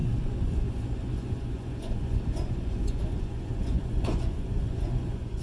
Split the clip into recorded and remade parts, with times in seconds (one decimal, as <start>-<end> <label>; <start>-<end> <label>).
0.0-5.4 remade